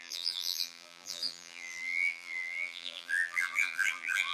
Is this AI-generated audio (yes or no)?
yes